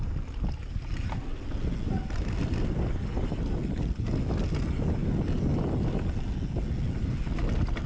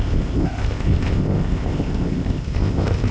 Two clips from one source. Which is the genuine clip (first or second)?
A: first